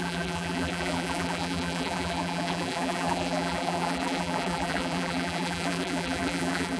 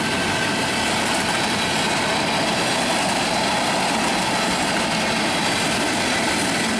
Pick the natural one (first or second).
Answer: second